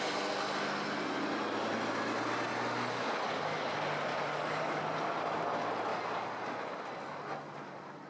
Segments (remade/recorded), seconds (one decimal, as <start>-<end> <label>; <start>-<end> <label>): 0.0-4.1 recorded; 4.1-4.8 remade; 4.8-8.1 recorded